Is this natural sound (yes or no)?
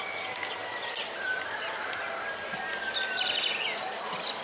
yes